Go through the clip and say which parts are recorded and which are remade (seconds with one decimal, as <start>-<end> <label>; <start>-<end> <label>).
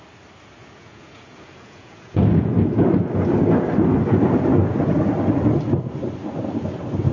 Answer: 0.0-0.6 recorded; 0.6-2.5 remade; 2.5-7.1 recorded